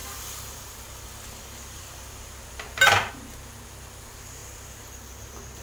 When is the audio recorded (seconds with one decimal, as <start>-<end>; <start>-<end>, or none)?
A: 3.1-5.6

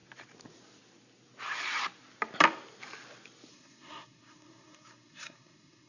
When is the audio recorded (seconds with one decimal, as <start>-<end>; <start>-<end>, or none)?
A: 0.0-3.5